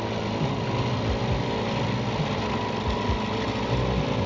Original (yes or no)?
yes